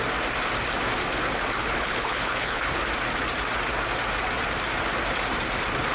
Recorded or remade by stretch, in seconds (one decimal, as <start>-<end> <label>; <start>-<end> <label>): 0.0-1.6 recorded; 1.6-2.7 remade; 2.7-5.9 recorded